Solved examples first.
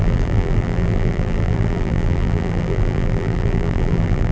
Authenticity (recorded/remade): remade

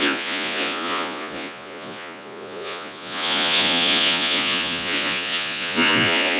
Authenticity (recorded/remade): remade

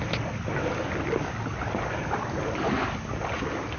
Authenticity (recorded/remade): recorded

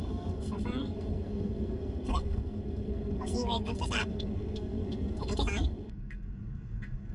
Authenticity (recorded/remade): remade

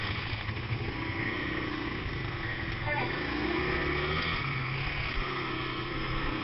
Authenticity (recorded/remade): remade